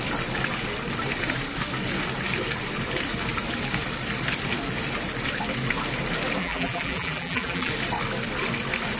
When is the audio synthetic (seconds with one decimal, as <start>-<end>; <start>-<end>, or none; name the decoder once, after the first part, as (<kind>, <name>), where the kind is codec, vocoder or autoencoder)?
6.4-7.7 (vocoder, BigVGAN v2)

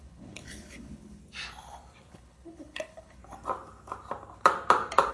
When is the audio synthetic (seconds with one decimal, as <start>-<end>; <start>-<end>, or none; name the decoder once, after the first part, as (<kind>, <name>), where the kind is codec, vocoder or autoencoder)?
0.0-1.2 (codec, HILCodec); 2.1-3.2

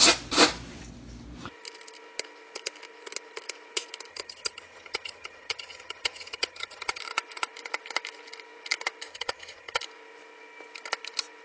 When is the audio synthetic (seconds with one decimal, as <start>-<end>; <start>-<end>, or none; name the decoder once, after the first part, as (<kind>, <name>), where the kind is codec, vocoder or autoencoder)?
4.1-7.0 (vocoder, HiFi-GAN); 9.1-9.8

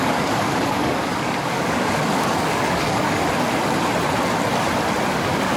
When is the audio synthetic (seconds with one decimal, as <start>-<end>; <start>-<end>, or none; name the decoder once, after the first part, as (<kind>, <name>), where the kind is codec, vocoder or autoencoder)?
0.0-3.2 (codec, DAC); 5.1-5.6

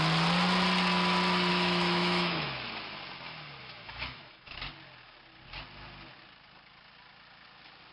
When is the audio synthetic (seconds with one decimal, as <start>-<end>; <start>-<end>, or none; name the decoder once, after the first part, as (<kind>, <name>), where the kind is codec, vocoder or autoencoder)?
1.5-2.7 (autoencoder, DAC-VAE); 3.6-4.6